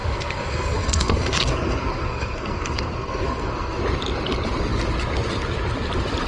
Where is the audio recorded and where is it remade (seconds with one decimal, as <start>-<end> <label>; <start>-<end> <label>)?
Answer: 0.0-3.8 remade; 3.8-6.3 recorded